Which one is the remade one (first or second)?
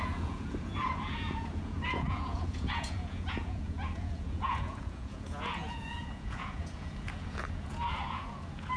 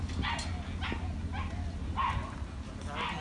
first